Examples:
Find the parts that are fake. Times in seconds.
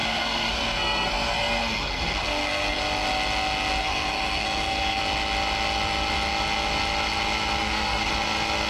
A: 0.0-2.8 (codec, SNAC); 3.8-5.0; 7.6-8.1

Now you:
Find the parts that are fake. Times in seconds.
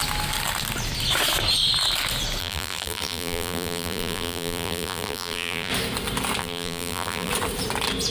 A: 2.4-5.7 (vocoder, BigVGAN v2); 6.4-7.3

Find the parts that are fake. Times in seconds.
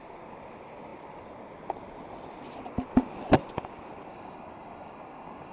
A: 4.1-5.5 (codec, DAC)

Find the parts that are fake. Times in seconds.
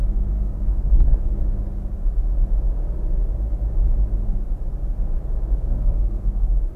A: 0.0-1.4 (codec, SNAC); 5.5-6.8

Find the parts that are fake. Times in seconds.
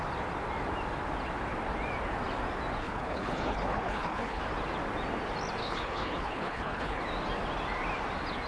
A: 2.8-4.4 (codec, HILCodec); 5.6-7.0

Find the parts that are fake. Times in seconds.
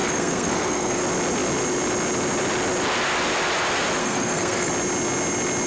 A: 0.0-1.0 (codec, SNAC); 4.0-4.7